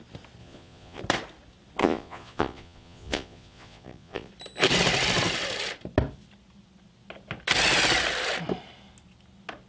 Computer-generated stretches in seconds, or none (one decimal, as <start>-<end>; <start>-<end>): 0.4-1.0; 1.8-4.3